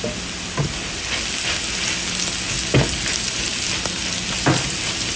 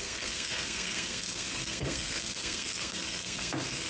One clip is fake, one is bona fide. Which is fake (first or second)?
second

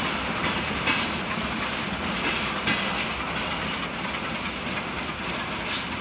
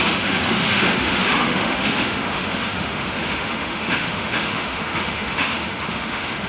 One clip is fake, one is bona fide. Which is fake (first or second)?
second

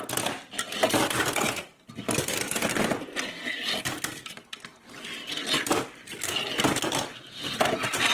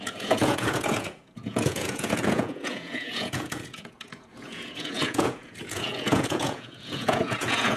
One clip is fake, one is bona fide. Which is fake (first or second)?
second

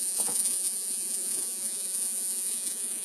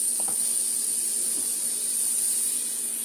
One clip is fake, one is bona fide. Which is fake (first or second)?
first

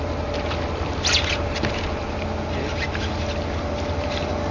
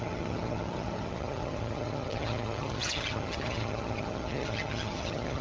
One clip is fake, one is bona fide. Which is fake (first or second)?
second